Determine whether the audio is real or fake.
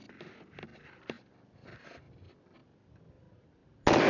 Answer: real